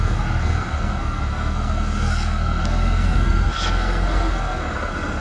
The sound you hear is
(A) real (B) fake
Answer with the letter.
B